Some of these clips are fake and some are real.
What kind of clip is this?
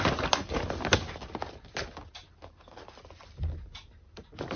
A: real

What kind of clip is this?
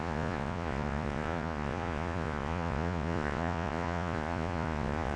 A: fake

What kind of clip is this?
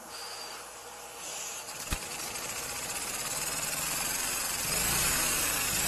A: real